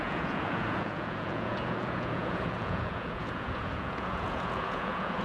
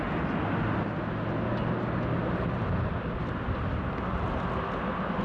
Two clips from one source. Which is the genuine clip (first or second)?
second